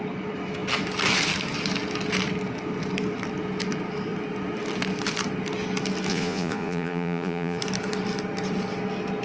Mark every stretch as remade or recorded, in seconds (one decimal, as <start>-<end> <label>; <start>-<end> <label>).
0.0-6.1 recorded; 6.1-7.6 remade; 7.6-9.2 recorded

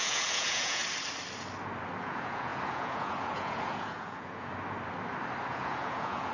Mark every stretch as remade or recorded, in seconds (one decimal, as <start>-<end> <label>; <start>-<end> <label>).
0.0-0.8 remade; 0.8-2.0 recorded; 2.0-4.5 remade; 4.5-5.5 recorded; 5.5-6.3 remade